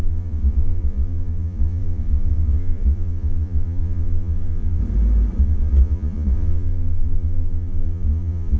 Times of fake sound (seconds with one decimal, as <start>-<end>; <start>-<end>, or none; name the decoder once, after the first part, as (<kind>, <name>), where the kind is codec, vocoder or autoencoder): 0.0-4.8 (vocoder, Vocos); 5.4-8.6

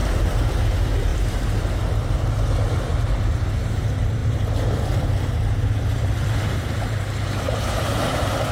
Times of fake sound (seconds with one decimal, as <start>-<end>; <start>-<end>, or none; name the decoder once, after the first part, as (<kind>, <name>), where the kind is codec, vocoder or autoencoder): 0.0-8.5 (vocoder, BigVGAN v2)